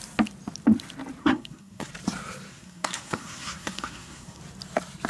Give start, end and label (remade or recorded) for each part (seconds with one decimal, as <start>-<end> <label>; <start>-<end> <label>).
0.0-1.2 recorded; 1.2-1.9 remade; 1.9-2.5 recorded; 2.5-4.4 remade; 4.4-5.1 recorded